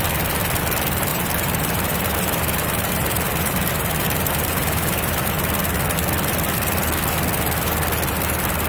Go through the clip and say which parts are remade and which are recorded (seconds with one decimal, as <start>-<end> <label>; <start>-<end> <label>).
0.0-1.1 recorded; 1.1-5.3 remade; 5.3-8.7 recorded

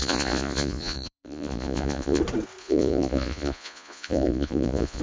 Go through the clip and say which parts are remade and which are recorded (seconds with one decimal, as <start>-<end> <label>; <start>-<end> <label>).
0.0-2.2 remade; 2.2-2.6 recorded; 2.6-5.0 remade